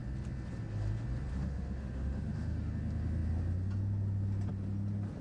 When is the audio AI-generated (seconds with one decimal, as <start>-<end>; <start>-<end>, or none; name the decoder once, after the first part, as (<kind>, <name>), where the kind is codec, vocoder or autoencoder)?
1.3-2.7 (autoencoder, DAC-VAE)